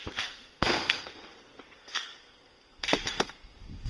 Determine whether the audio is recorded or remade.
remade